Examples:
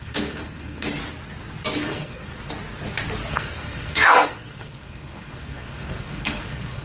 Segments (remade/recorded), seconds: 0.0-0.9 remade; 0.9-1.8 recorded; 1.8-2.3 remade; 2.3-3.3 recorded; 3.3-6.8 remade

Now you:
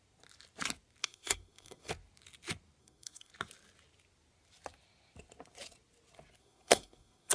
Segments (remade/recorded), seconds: 0.0-1.0 recorded; 1.0-1.9 remade; 1.9-2.8 recorded; 2.8-3.3 remade; 3.3-6.4 recorded; 6.4-7.3 remade

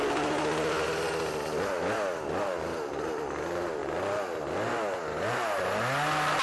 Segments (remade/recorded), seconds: 0.0-6.4 recorded

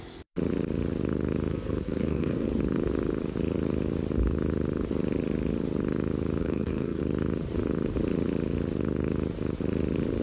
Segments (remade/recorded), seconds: 0.0-1.5 recorded; 1.5-2.5 remade; 2.5-6.4 recorded; 6.4-7.0 remade; 7.0-10.2 recorded

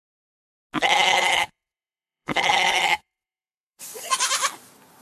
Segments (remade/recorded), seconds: 0.0-1.1 recorded; 1.1-4.1 remade; 4.1-5.0 recorded

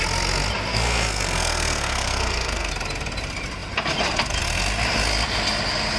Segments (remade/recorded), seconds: 0.0-0.7 recorded; 0.7-2.7 remade; 2.7-6.0 recorded

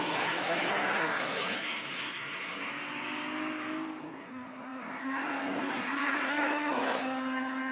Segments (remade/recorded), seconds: 0.0-2.7 remade; 2.7-4.0 recorded; 4.0-7.7 remade

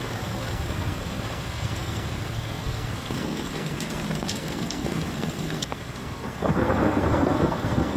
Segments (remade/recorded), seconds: 0.0-8.0 remade